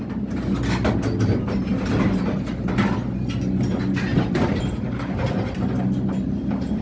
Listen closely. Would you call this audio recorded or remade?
recorded